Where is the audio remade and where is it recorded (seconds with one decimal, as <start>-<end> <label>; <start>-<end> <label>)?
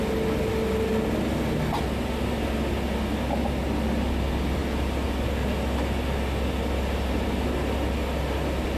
0.0-8.8 recorded